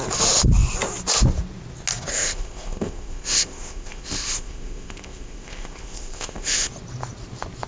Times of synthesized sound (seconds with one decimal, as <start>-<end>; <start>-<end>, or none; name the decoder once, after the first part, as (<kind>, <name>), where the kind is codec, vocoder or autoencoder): 2.1-6.7 (codec, ZipCodec)